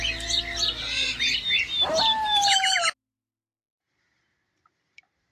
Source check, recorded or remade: recorded